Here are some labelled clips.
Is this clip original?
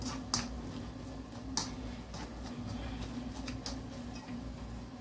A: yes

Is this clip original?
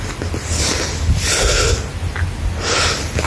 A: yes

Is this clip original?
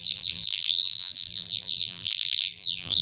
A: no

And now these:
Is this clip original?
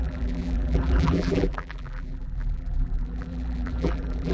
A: no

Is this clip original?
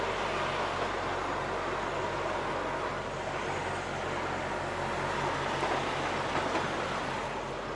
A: yes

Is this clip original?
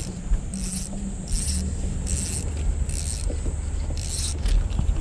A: yes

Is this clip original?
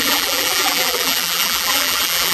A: no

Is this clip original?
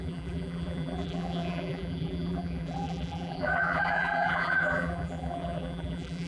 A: no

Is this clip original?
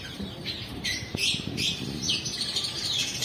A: no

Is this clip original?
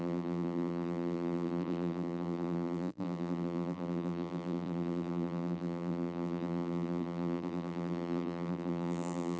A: no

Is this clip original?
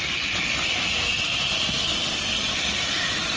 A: yes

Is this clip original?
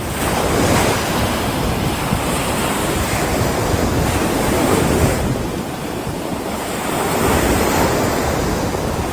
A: yes